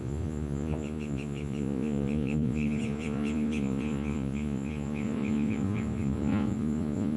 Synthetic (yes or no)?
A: yes